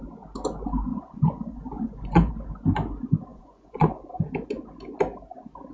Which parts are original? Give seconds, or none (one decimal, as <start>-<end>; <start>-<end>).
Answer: 0.0-0.9; 2.3-3.3; 4.1-5.7